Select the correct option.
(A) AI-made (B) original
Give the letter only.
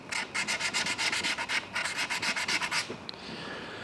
B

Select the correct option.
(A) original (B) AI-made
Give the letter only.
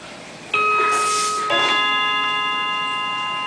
A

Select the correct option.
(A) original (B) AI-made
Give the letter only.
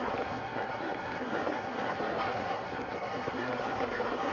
B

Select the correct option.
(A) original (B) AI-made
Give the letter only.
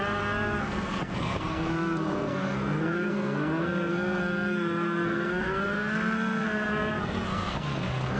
B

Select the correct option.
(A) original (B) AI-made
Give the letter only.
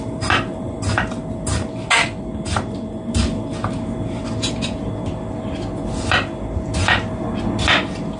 A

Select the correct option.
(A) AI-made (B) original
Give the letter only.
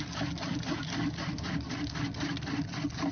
B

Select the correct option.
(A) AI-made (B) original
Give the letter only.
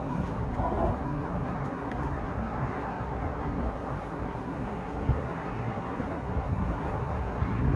A